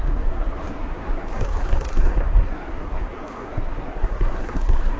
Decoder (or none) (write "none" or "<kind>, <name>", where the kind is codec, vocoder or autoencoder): codec, SNAC